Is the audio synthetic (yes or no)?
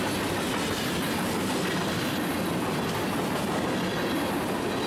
no